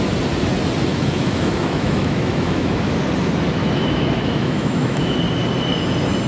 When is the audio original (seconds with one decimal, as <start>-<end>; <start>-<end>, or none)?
0.0-0.9; 3.0-3.6; 5.2-6.3

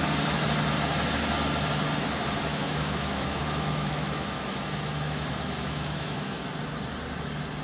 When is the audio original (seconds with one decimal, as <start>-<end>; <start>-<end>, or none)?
0.0-2.5; 6.4-7.6

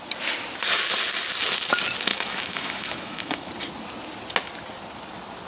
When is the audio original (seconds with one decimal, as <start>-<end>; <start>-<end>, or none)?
0.0-2.1; 3.5-5.5